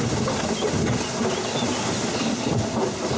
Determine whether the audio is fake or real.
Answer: real